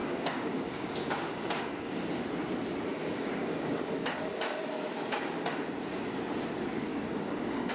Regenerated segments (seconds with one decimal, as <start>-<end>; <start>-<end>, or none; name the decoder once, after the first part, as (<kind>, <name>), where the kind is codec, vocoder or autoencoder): 0.0-1.9 (codec, DAC); 2.9-4.7; 6.9-7.7